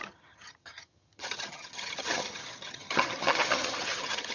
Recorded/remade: remade